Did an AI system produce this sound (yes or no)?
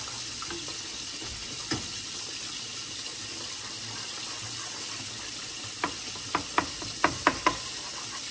no